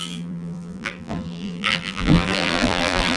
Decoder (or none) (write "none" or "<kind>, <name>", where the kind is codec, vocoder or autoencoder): vocoder, BigVGAN v2